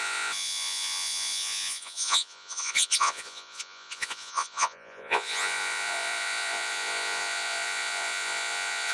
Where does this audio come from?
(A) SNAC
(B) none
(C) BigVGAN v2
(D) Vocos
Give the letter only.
D